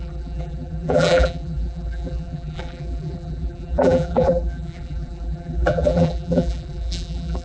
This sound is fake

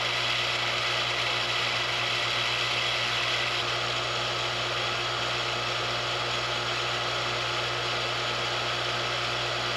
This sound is real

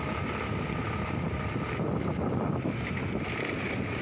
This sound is real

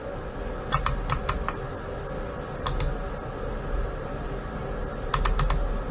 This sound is real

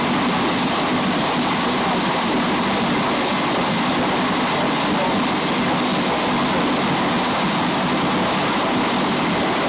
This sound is real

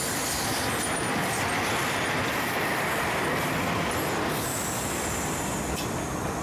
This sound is real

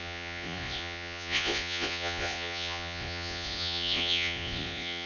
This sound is fake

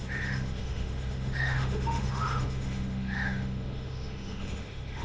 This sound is fake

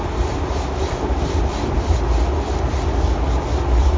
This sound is real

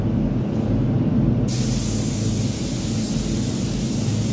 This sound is real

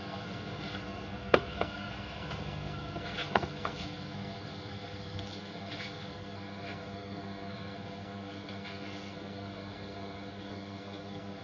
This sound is fake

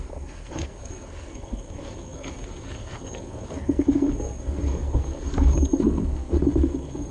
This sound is fake